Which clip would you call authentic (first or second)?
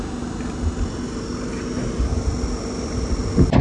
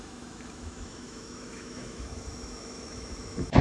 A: first